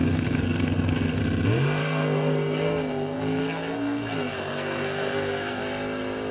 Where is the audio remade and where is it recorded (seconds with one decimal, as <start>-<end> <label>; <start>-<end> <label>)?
0.0-1.2 remade; 1.2-1.8 recorded; 1.8-5.6 remade; 5.6-6.3 recorded